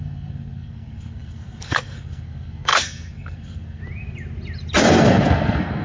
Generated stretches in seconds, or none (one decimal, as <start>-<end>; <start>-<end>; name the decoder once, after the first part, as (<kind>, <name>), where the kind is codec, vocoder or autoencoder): 0.0-3.8 (codec, SNAC); 4.8-5.8